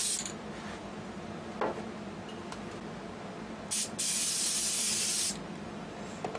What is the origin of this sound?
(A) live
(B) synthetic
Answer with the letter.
A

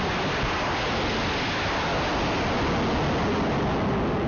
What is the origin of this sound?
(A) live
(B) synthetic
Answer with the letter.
A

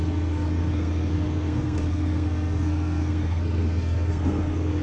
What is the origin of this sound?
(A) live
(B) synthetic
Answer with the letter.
B